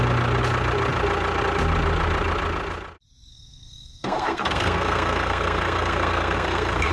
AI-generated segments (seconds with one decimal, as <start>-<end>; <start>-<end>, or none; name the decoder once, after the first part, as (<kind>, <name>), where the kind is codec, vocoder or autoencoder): 3.3-6.9 (codec, SNAC)